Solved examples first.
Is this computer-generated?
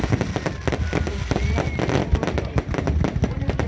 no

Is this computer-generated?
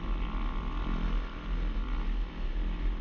no